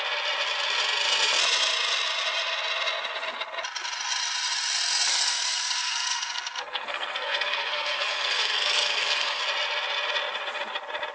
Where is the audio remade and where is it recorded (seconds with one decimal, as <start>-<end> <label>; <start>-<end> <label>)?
0.0-5.1 recorded; 5.1-9.4 remade; 9.4-11.1 recorded